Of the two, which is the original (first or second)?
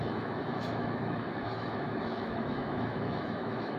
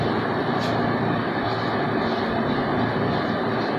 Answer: second